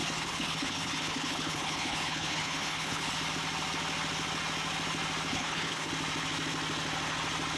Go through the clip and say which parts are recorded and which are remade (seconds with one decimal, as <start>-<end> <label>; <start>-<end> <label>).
0.0-3.1 remade; 3.1-5.3 recorded; 5.3-5.9 remade; 5.9-7.6 recorded